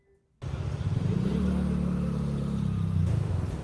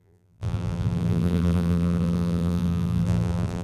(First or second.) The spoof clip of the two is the second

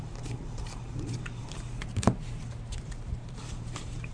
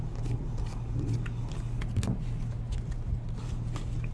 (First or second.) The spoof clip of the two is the first